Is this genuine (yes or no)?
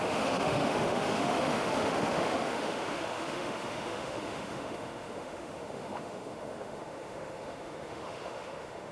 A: no